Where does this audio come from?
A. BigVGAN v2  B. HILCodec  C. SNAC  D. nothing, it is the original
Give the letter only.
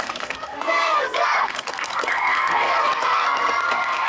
C